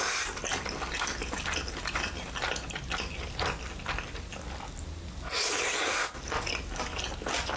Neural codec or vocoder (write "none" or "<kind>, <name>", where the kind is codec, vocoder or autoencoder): none